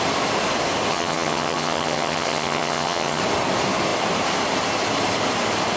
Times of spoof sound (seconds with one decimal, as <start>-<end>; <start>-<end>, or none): 0.9-3.2